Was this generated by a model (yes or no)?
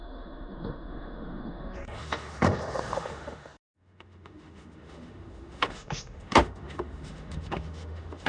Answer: yes